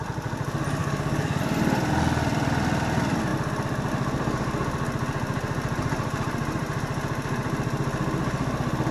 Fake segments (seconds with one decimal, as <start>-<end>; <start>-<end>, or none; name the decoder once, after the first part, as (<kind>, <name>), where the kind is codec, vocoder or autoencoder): 0.8-1.4 (codec, DAC)

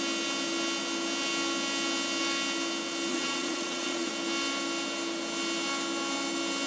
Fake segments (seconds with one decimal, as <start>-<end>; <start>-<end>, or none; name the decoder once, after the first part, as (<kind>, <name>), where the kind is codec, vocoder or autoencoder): 3.1-4.1 (vocoder, Vocos)

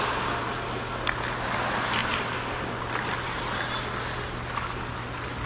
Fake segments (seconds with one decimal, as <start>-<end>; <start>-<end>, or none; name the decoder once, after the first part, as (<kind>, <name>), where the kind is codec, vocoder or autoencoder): none

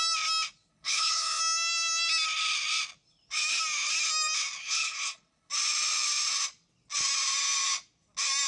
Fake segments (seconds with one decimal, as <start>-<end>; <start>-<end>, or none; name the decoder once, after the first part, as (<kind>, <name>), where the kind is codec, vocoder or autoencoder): 0.7-1.4 (codec, HILCodec); 4.6-5.5